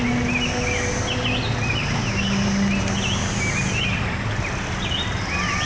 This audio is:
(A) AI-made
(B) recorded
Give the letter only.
B